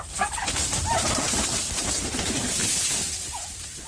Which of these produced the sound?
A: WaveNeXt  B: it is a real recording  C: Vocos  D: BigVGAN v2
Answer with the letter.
D